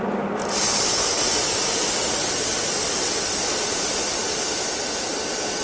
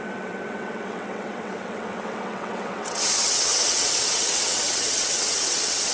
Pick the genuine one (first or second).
first